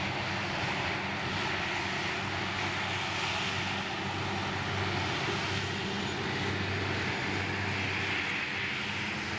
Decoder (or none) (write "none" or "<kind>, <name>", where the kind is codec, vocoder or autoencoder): none